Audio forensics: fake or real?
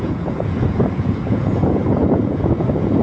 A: fake